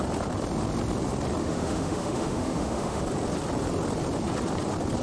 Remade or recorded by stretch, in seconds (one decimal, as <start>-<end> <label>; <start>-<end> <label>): 0.0-1.4 recorded; 1.4-3.0 remade; 3.0-5.0 recorded